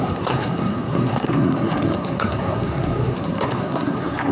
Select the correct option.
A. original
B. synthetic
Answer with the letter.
B